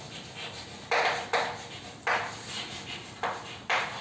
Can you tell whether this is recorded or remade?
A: recorded